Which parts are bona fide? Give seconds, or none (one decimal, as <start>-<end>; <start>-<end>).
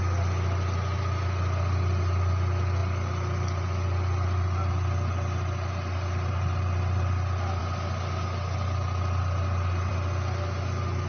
0.0-11.1